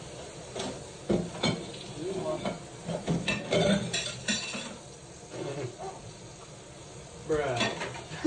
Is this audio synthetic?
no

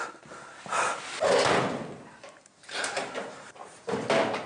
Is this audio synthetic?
no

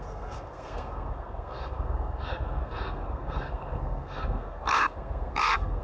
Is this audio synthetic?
yes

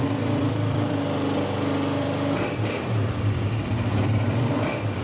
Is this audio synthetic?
yes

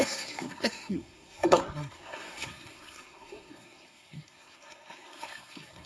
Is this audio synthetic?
yes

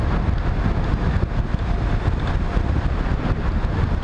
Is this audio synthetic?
no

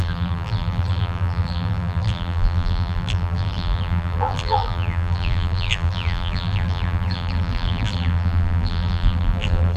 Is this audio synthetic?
yes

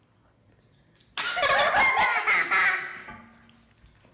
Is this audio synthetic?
no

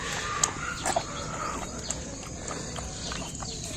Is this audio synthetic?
no